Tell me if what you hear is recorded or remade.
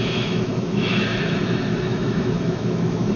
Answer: remade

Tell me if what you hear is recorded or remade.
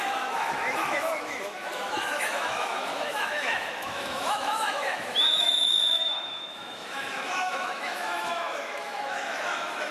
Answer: remade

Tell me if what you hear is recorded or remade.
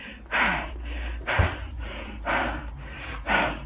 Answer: recorded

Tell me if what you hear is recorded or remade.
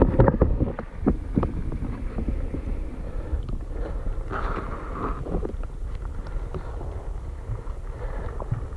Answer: recorded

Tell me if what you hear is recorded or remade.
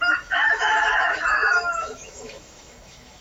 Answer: remade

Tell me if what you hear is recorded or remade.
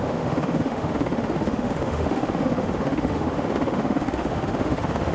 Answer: remade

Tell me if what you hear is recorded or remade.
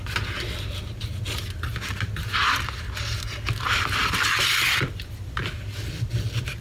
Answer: recorded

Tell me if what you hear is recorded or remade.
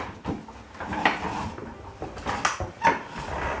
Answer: recorded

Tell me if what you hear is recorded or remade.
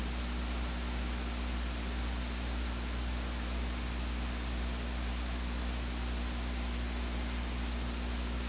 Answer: recorded